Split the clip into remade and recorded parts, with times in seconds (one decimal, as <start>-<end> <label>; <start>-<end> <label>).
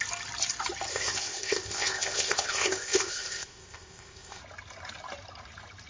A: 0.0-0.9 recorded; 0.9-4.4 remade; 4.4-5.9 recorded